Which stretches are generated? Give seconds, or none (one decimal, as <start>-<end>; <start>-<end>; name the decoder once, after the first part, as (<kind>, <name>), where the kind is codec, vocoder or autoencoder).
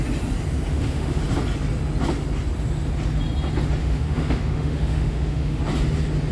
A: 0.7-1.2 (autoencoder, DAC-VAE); 3.8-5.6